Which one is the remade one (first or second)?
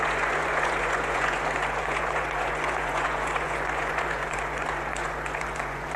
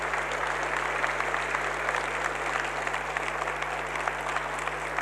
first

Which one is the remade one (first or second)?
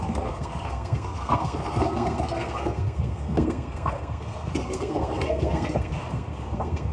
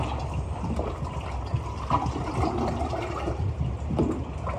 first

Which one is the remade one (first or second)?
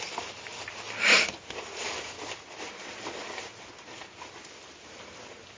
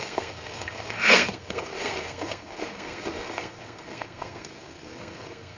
second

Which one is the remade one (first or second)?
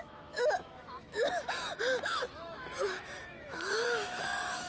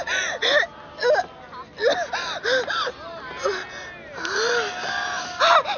first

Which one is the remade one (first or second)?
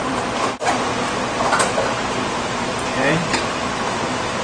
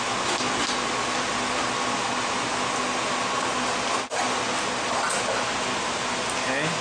first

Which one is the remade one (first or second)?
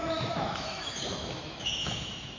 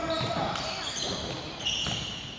first